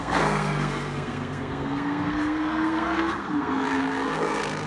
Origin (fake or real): fake